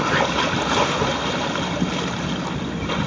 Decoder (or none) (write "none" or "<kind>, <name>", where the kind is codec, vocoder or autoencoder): none